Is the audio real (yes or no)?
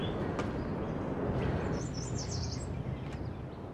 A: yes